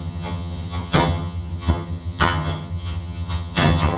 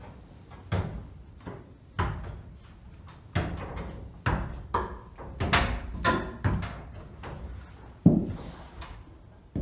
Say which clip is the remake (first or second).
first